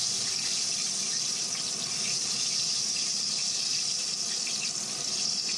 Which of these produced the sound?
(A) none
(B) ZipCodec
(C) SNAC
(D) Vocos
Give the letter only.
A